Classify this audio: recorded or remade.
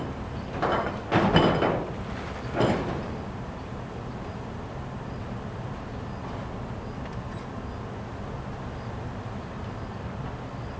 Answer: recorded